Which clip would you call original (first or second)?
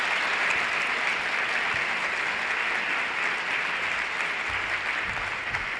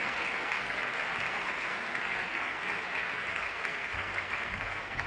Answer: first